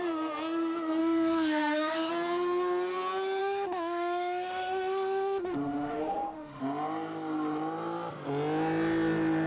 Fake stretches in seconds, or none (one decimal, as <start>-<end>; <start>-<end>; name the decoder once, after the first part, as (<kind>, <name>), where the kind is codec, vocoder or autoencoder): 1.0-2.1 (autoencoder, DAC-VAE); 3.4-6.6

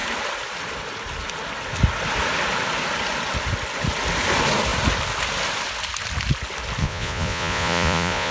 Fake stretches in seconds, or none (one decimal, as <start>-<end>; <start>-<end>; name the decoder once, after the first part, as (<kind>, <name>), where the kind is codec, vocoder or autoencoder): 6.8-8.3 (vocoder, Vocos)

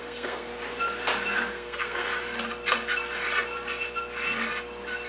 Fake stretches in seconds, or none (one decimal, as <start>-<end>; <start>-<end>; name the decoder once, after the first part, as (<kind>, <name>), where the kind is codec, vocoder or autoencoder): 0.0-0.5 (codec, SNAC); 1.5-2.1

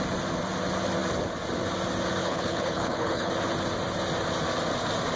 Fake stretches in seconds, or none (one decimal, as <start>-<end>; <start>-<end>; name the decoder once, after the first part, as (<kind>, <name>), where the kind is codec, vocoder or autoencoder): 2.2-3.3 (codec, HILCodec)

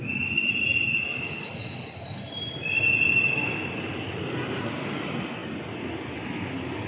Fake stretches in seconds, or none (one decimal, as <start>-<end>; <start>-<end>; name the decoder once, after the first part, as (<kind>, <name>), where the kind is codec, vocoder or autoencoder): none

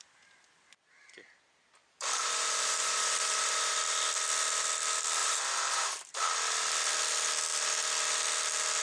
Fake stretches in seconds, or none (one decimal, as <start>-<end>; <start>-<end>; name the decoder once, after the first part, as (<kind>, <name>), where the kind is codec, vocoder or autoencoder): 1.8-3.8 (vocoder, BigVGAN v2); 5.2-6.3

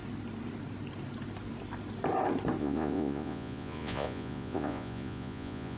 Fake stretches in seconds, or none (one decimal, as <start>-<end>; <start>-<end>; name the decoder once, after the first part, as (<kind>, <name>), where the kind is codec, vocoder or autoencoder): 2.6-5.8 (vocoder, Vocos)